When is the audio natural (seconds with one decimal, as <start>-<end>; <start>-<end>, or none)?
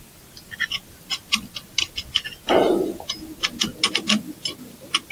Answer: 0.0-5.1